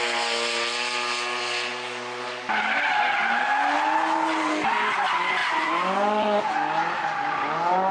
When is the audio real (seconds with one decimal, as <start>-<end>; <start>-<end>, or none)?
0.0-7.9